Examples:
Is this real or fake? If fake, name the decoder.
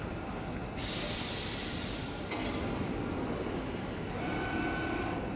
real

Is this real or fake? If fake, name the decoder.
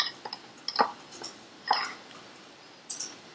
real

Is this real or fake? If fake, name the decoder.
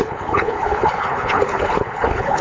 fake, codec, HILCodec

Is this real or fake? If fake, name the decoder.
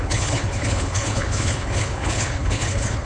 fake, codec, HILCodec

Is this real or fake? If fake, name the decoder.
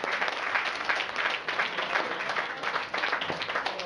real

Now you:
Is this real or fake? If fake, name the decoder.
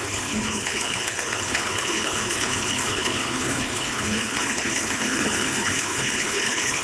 fake, codec, HILCodec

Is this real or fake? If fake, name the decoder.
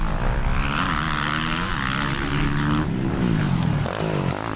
real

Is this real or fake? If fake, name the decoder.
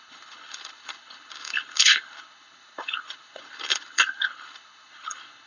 fake, codec, HILCodec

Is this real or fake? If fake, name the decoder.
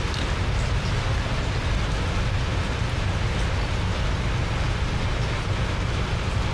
real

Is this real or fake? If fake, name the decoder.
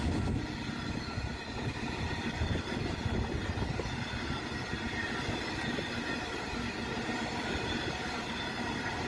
real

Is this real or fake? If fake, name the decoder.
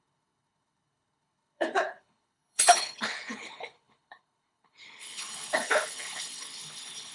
fake, codec, HILCodec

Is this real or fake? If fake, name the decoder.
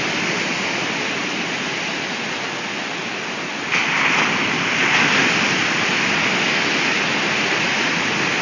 real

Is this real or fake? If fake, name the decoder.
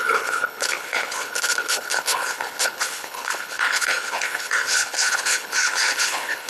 fake, codec, HILCodec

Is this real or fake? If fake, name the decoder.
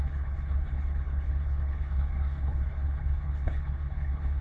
fake, codec, HILCodec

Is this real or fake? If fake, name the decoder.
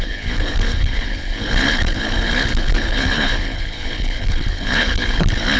fake, codec, HILCodec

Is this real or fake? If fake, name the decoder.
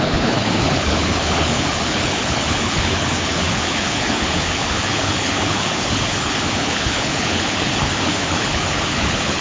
fake, codec, HILCodec